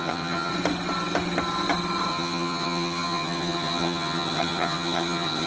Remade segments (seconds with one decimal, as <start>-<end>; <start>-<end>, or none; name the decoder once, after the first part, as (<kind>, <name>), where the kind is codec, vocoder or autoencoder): 0.0-0.5 (vocoder, HiFi-GAN); 2.1-5.5